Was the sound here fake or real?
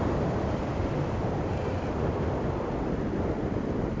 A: real